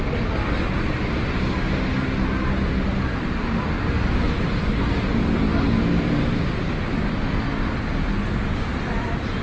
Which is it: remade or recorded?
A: recorded